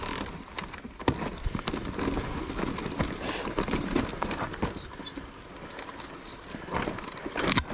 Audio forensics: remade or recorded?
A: recorded